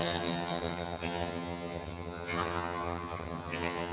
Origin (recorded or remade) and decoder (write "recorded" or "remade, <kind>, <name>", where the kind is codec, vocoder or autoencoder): remade, vocoder, HiFi-GAN